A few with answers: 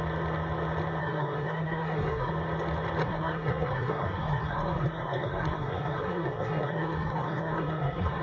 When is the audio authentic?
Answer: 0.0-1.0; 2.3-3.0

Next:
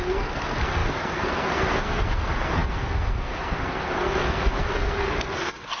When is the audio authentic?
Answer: none

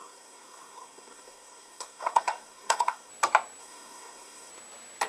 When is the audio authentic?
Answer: 3.1-3.6; 4.5-5.1

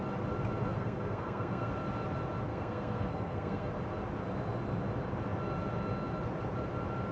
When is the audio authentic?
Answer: 0.0-0.7; 1.7-2.5; 3.7-7.1

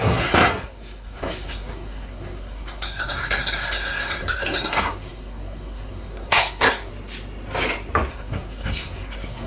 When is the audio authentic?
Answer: 6.9-8.1

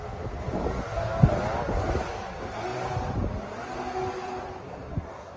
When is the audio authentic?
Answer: 0.0-4.6

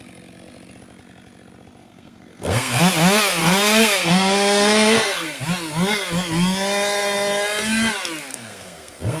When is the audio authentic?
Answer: 0.0-1.8; 2.8-3.4; 5.4-8.3

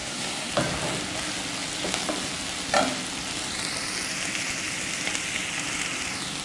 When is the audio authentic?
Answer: 0.5-6.4